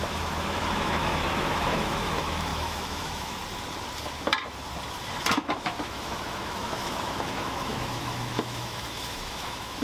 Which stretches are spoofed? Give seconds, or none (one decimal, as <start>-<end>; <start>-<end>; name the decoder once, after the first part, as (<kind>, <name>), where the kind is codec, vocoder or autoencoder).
0.0-3.4 (autoencoder, DAC-VAE); 5.3-9.8